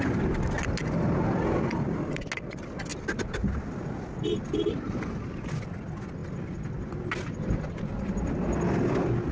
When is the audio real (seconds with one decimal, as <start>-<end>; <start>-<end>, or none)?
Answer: 0.0-9.3

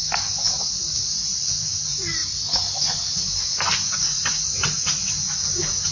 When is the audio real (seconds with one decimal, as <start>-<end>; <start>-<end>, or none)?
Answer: 0.0-5.9

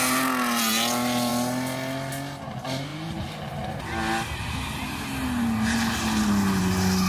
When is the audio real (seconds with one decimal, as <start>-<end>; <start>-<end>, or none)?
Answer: 0.0-7.1

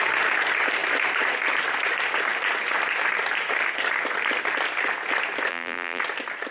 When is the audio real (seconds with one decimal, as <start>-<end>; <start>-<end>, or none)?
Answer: 0.0-5.5; 6.0-6.5

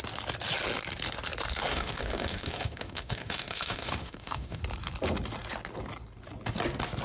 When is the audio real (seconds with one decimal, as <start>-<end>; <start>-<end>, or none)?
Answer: 0.0-1.7; 4.6-7.0